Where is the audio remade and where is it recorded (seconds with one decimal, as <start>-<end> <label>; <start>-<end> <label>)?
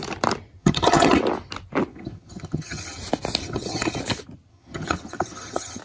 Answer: 0.0-0.6 recorded; 0.6-1.2 remade; 1.2-1.9 recorded; 1.9-3.0 remade; 3.0-3.4 recorded; 3.4-4.0 remade; 4.0-4.5 recorded; 4.5-5.8 remade